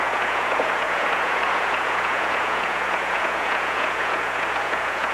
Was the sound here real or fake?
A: fake